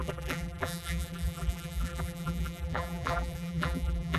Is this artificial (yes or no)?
yes